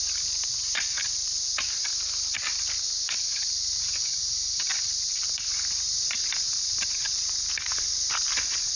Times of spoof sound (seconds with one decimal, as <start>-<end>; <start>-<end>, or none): none